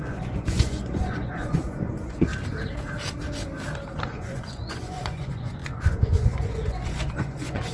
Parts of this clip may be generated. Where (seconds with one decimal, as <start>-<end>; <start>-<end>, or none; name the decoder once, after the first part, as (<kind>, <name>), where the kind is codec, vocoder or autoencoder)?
0.0-2.3 (vocoder, Vocos); 4.1-7.7